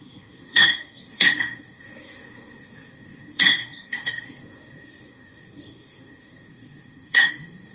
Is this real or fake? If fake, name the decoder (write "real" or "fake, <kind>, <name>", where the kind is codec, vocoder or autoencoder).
fake, codec, SNAC